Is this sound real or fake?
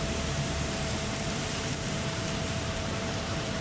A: fake